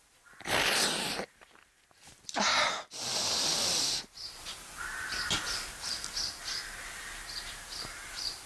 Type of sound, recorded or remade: recorded